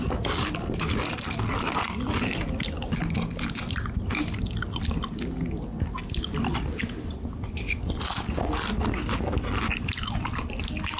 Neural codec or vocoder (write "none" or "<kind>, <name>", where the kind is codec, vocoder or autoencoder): none